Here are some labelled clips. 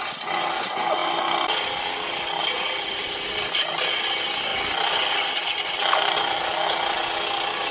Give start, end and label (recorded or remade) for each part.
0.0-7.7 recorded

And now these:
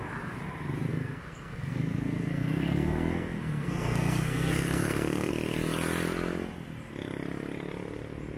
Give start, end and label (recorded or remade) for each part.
0.0-0.9 recorded; 0.9-5.3 remade; 5.3-8.4 recorded

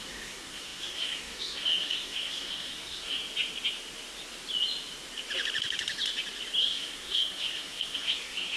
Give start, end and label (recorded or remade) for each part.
0.0-3.2 remade; 3.2-6.6 recorded; 6.6-8.6 remade

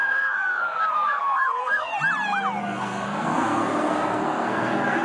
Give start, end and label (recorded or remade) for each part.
0.0-1.9 remade; 1.9-2.6 recorded; 2.6-5.0 remade

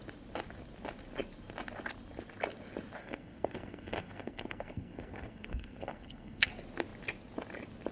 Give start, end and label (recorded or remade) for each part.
0.0-3.0 recorded; 3.0-6.5 remade; 6.5-7.9 recorded

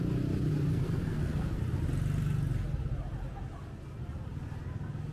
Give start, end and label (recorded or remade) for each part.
0.0-0.7 recorded; 0.7-1.6 remade; 1.6-5.1 recorded